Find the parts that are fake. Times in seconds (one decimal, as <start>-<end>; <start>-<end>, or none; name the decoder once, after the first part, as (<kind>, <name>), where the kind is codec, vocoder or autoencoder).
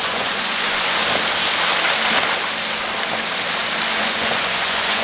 0.0-1.0 (vocoder, Vocos); 4.0-5.0